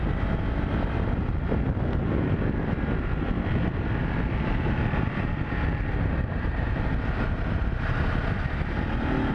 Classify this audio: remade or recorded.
recorded